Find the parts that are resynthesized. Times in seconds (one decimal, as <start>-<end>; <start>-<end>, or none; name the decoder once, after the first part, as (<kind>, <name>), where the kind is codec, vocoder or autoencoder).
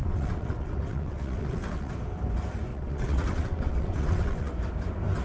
0.0-1.9 (vocoder, WaveNeXt); 2.7-4.5